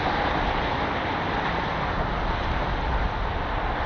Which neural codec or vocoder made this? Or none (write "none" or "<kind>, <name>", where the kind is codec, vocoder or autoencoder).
none